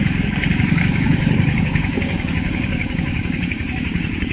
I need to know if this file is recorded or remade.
remade